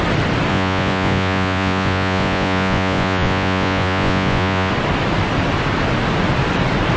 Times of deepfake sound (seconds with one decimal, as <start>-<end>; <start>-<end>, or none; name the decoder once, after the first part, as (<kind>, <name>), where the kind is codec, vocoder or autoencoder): 0.5-4.7 (vocoder, Vocos)